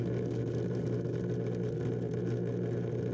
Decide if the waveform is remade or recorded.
recorded